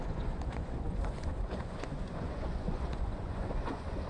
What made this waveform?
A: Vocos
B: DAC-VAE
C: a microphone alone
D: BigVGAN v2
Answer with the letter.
A